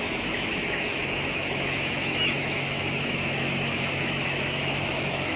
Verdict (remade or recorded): remade